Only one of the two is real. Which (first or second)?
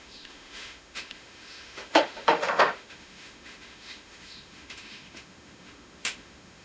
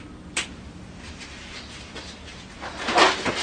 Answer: second